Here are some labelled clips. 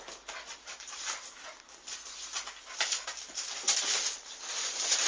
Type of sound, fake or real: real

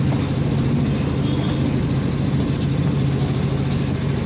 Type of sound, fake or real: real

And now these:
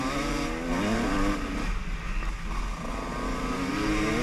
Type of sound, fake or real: real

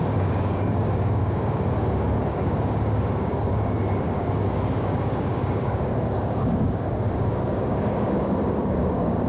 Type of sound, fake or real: fake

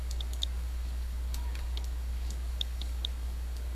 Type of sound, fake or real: fake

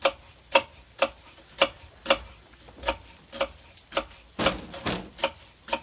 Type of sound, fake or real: real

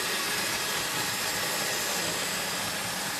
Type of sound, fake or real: real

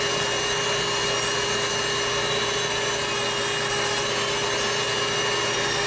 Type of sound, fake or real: real